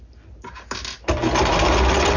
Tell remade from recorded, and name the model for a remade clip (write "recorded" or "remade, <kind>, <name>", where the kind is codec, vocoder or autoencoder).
recorded